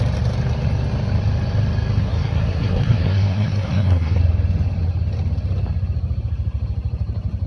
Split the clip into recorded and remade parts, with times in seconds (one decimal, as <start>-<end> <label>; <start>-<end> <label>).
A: 0.0-2.0 recorded; 2.0-4.2 remade; 4.2-7.5 recorded